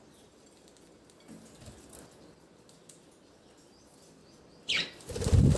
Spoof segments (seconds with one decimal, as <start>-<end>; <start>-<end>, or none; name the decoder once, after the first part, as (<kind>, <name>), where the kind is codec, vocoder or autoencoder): 4.2-4.8 (vocoder, BigVGAN v2)